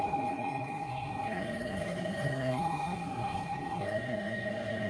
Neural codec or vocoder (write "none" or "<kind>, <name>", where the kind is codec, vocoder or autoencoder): codec, SNAC